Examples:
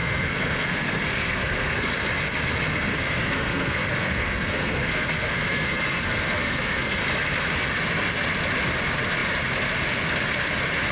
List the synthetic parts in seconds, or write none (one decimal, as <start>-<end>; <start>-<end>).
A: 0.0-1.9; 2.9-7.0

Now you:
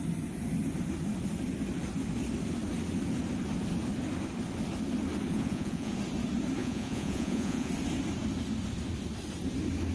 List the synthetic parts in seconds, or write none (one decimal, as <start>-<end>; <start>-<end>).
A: 5.3-5.9; 6.6-7.7

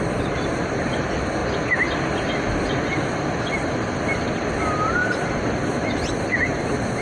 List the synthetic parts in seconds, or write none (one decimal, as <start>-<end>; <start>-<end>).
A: none

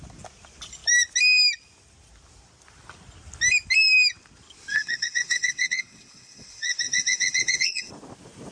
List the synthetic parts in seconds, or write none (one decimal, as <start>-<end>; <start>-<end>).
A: 4.7-7.9

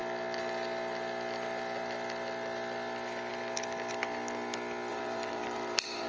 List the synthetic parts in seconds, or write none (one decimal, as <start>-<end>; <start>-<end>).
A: 4.9-6.1